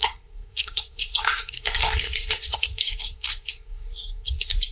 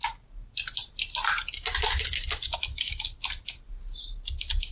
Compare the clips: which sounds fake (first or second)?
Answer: first